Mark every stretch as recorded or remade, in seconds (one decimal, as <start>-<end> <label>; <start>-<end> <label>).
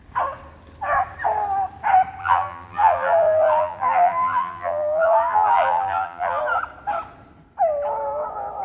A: 0.0-2.2 recorded; 2.2-6.4 remade; 6.4-8.6 recorded